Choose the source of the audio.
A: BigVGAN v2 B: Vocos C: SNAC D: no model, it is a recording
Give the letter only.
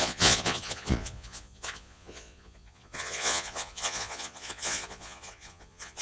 B